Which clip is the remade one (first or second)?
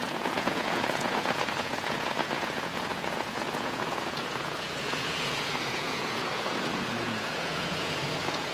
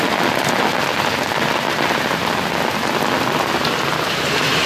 first